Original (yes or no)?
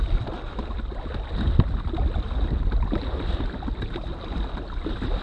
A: yes